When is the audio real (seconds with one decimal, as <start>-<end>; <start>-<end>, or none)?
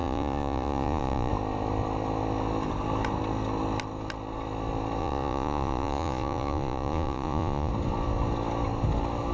1.3-5.0; 7.7-9.3